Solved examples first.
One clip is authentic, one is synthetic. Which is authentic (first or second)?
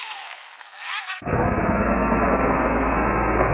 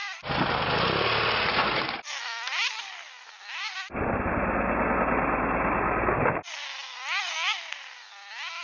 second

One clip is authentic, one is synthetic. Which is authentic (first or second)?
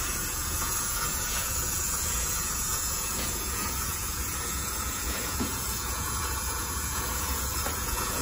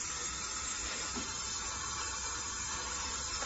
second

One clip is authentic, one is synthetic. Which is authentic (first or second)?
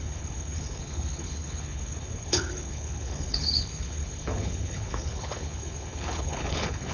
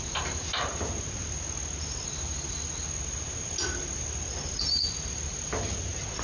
second